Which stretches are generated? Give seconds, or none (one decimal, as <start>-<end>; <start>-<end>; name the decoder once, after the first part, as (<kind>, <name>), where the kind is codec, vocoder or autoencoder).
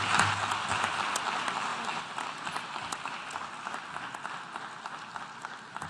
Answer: none